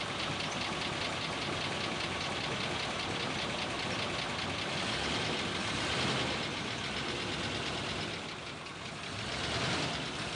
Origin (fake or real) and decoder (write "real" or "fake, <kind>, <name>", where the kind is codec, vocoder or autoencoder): real